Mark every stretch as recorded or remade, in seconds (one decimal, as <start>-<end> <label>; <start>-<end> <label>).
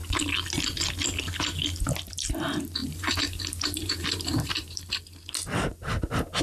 0.0-2.8 recorded; 2.8-4.8 remade; 4.8-6.4 recorded